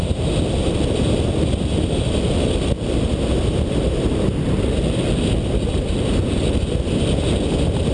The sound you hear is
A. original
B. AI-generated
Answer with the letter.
A